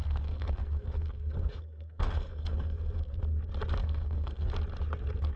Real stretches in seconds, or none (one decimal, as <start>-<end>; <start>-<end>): 3.2-3.8; 4.5-5.4